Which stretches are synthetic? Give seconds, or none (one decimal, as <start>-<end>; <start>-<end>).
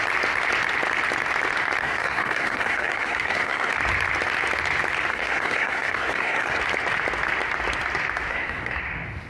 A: 1.8-3.7; 5.1-6.6; 8.3-8.8